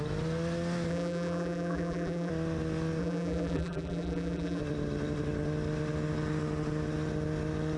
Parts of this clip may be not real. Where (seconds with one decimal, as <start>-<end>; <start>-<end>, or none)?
0.9-2.3; 3.0-4.6